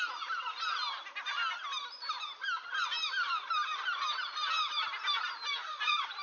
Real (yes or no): yes